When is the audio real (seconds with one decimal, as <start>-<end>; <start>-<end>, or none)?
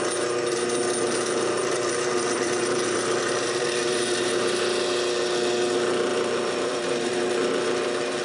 0.0-1.6; 4.0-6.1; 7.2-8.2